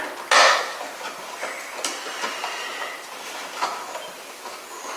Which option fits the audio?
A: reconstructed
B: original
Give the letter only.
B